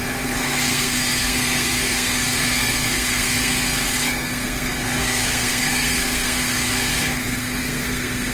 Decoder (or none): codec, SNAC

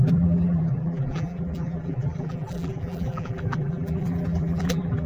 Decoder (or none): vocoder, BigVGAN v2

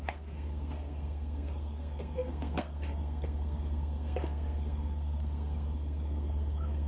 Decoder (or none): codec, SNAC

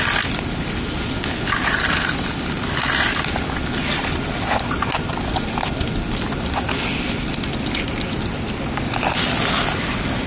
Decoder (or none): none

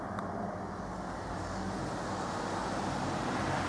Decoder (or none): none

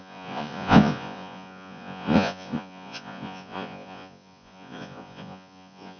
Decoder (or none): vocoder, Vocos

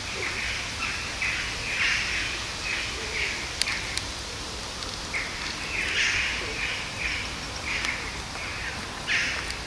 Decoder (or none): none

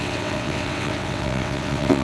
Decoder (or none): vocoder, WaveNeXt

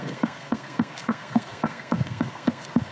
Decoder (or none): codec, SNAC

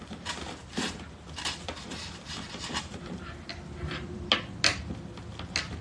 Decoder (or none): none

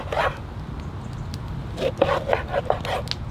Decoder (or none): none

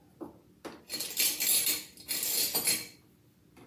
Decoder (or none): none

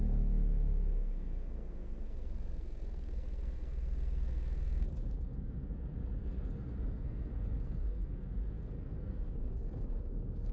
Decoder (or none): codec, SNAC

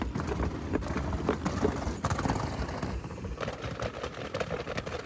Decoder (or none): none